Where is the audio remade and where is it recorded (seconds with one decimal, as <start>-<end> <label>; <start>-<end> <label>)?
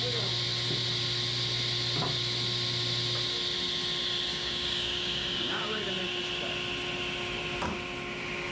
0.0-4.3 recorded; 4.3-5.8 remade; 5.8-8.5 recorded